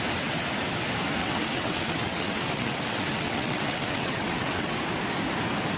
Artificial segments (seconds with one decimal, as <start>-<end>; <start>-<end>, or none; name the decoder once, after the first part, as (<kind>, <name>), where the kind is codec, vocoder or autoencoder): 1.2-4.7 (vocoder, WaveNeXt)

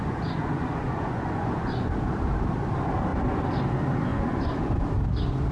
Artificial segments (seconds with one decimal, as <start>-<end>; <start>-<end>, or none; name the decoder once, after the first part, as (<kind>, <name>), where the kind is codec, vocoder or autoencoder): 0.0-1.9 (vocoder, Vocos); 4.1-4.8

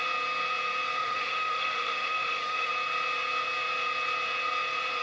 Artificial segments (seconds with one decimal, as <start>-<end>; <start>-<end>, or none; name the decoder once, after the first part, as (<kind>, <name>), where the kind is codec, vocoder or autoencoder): 1.0-2.7 (autoencoder, DAC-VAE)